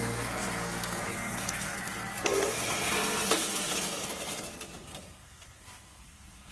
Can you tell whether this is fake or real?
fake